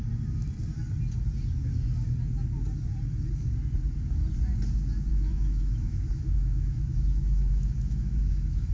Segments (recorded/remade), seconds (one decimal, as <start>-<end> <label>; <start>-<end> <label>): 0.0-5.1 recorded; 5.1-8.7 remade